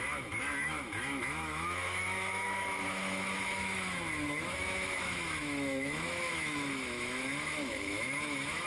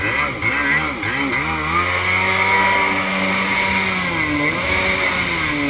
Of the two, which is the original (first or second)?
second